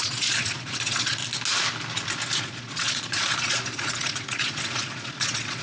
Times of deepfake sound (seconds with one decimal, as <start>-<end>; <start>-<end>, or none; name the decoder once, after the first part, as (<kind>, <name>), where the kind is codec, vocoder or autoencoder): 0.0-1.2 (vocoder, Vocos); 2.4-5.6